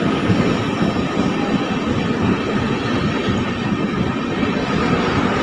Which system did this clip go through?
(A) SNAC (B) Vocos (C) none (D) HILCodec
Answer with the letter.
C